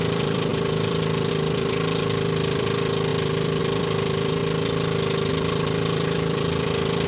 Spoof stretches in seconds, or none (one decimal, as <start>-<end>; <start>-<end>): 0.0-4.4; 5.3-7.1